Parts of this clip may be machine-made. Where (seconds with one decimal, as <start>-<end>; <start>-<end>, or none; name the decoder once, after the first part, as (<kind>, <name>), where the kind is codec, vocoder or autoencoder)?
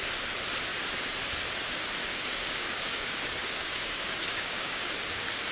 2.0-4.9 (codec, DAC)